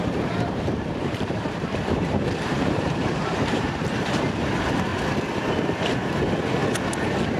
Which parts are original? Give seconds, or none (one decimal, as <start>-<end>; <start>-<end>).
4.9-5.8; 6.6-7.4